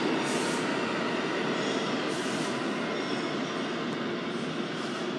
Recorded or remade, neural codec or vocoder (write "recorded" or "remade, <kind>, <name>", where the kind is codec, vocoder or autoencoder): recorded